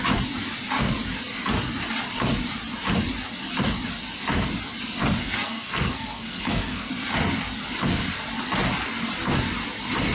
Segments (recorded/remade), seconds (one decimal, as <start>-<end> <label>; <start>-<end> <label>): 0.0-5.2 recorded; 5.2-6.9 remade; 6.9-10.1 recorded